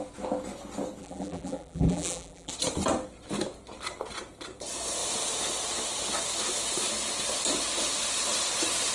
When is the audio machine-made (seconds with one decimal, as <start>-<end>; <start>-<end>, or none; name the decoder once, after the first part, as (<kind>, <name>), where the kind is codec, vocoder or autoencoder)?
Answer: 1.0-2.5 (vocoder, BigVGAN v2)